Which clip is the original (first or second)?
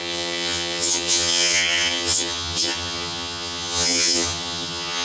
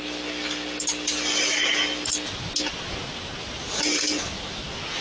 second